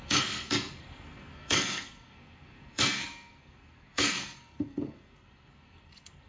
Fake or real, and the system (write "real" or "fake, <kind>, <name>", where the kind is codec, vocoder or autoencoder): fake, codec, SNAC